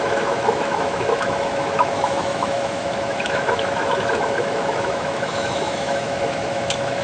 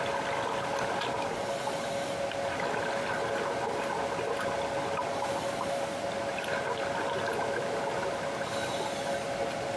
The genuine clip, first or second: second